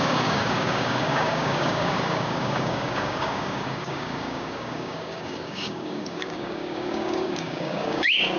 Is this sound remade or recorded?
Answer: remade